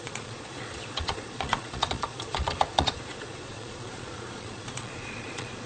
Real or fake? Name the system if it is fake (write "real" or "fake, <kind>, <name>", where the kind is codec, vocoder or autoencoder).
fake, vocoder, Vocos